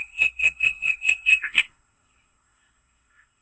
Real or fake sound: fake